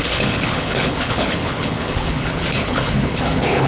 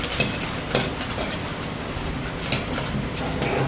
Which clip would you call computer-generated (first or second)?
first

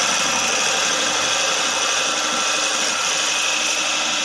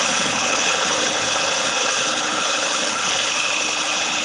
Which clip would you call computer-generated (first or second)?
second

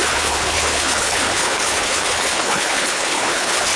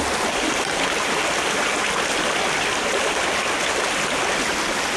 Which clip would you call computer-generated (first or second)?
first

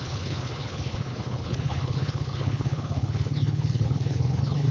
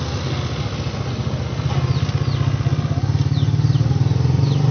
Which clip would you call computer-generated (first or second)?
first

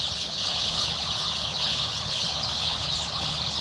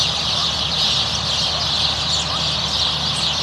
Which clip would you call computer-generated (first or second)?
first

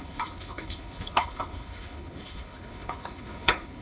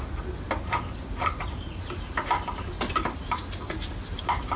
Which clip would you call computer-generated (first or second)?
first